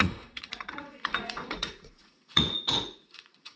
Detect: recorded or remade remade